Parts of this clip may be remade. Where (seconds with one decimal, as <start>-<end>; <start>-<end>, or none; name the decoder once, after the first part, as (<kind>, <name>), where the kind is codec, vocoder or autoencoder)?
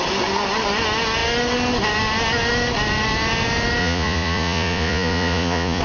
3.8-5.8 (vocoder, Vocos)